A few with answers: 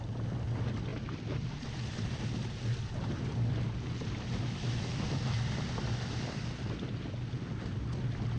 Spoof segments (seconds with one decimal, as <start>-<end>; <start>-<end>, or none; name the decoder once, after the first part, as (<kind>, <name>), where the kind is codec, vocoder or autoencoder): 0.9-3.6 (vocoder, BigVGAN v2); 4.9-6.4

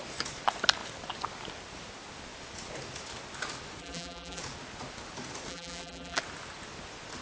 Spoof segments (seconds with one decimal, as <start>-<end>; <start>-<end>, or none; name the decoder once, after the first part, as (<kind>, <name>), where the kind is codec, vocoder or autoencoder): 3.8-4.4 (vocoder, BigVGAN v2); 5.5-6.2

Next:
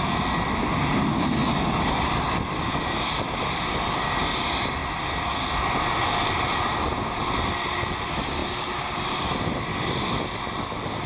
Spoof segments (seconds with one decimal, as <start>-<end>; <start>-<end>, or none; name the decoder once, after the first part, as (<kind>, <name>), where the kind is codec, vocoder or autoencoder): none

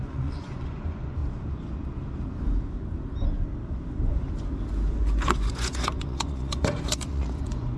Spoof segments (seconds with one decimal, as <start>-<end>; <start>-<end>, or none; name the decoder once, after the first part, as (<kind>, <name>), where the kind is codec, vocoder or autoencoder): 0.0-1.2 (vocoder, Vocos); 4.9-7.8